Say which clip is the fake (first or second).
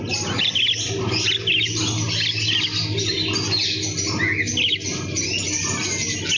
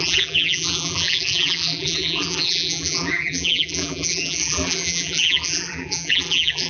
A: second